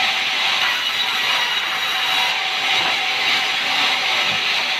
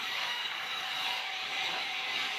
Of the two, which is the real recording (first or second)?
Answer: first